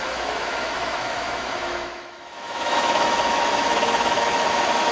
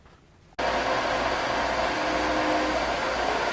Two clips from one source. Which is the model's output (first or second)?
first